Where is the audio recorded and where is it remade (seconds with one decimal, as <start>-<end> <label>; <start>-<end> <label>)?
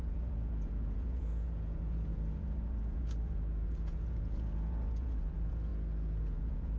0.0-5.7 remade; 5.7-6.2 recorded; 6.2-6.8 remade